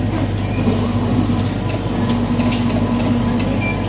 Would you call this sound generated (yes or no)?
no